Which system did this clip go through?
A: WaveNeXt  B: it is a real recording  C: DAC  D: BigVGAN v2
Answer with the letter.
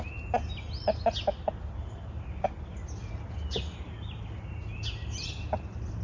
B